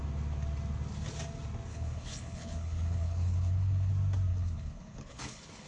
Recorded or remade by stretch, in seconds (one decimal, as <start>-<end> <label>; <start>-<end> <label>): 0.0-1.7 recorded; 1.7-3.9 remade; 3.9-4.3 recorded; 4.3-5.7 remade